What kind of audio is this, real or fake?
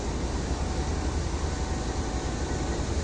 real